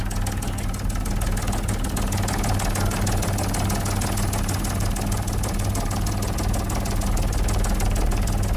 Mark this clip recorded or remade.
recorded